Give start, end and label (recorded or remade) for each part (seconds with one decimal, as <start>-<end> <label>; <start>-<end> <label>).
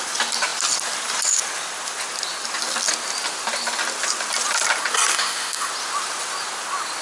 0.0-5.1 recorded; 5.1-5.7 remade; 5.7-7.0 recorded